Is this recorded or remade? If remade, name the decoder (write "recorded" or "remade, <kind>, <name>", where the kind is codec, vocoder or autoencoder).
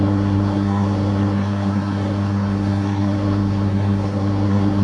remade, codec, SNAC